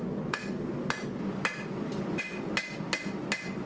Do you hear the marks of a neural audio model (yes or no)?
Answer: no